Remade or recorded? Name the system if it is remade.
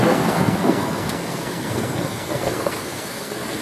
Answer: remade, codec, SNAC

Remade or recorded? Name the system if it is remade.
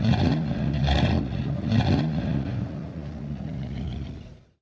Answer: remade, vocoder, Vocos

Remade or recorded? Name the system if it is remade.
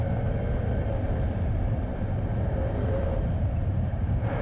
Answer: remade, vocoder, BigVGAN v2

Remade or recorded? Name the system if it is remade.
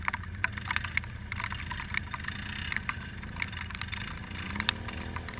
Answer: recorded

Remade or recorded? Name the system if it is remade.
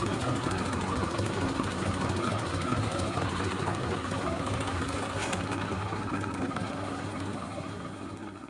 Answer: remade, codec, SNAC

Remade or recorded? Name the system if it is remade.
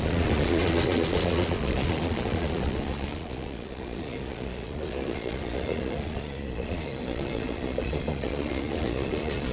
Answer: remade, vocoder, Vocos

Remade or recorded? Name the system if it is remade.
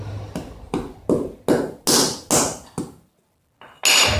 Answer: recorded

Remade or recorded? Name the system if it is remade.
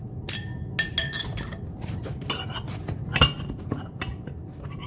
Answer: recorded